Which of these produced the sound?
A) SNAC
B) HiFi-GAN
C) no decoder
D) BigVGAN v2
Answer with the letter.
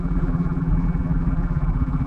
D